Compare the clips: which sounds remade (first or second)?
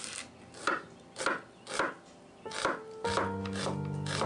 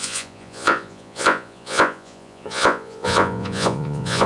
second